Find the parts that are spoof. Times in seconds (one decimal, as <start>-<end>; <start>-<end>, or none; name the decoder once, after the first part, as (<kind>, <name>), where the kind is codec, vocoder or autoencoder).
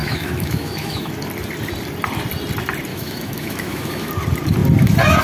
0.0-1.1 (autoencoder, DAC-VAE); 2.9-4.1